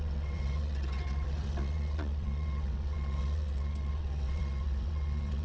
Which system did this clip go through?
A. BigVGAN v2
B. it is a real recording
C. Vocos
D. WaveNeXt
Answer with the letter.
D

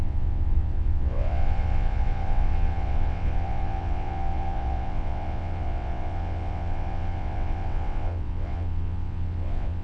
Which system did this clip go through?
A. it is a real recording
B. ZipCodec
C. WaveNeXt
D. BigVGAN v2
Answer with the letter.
C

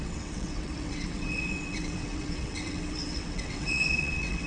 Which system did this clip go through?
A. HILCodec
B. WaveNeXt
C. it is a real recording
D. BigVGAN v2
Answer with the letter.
B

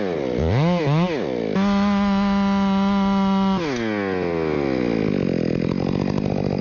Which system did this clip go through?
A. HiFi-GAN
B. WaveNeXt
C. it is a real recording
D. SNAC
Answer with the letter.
C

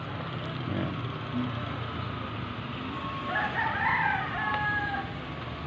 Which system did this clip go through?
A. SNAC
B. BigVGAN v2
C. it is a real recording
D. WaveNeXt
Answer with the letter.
C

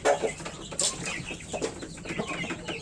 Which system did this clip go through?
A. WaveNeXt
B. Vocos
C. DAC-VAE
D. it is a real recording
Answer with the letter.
D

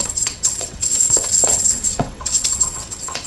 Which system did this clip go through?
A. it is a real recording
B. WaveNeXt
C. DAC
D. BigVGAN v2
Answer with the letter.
B